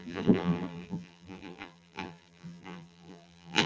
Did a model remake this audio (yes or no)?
yes